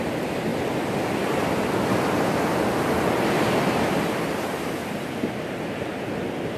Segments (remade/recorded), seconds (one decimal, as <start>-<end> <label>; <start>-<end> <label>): 0.0-6.6 recorded